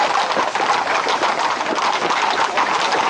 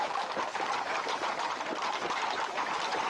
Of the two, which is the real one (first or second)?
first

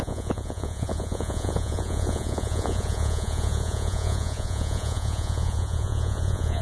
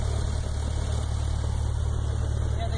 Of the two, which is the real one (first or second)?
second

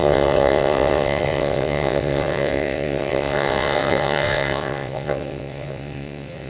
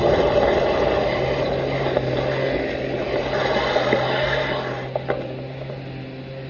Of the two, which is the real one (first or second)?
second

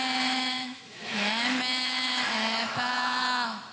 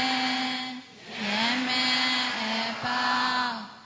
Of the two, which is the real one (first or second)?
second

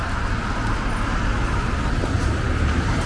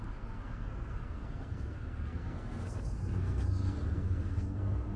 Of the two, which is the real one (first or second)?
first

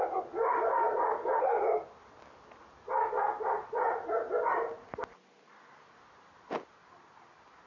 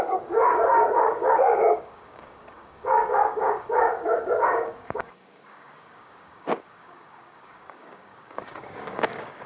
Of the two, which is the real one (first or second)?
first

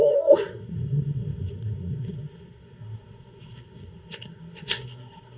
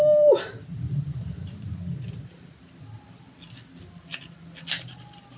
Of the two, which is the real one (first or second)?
second